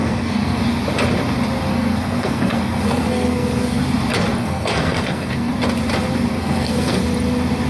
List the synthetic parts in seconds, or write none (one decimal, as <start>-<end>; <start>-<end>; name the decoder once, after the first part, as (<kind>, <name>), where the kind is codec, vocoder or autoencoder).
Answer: 0.0-0.6 (codec, SNAC); 1.7-3.8; 4.4-5.5; 6.3-7.0